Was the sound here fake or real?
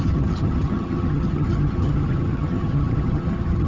fake